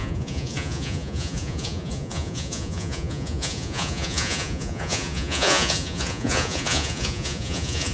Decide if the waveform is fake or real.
fake